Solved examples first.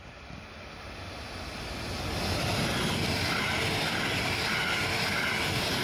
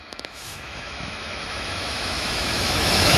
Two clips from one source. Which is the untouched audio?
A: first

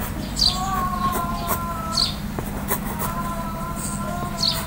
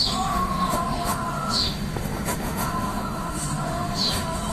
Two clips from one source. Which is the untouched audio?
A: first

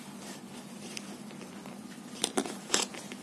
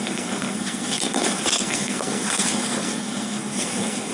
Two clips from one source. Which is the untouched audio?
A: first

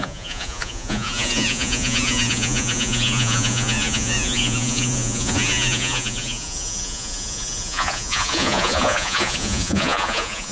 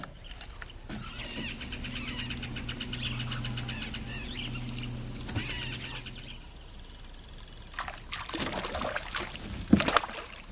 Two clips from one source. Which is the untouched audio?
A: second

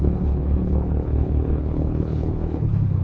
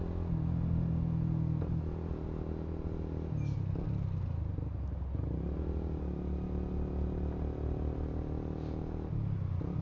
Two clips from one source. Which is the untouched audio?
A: second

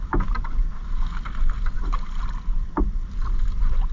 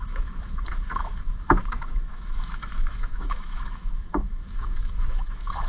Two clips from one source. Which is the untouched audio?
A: first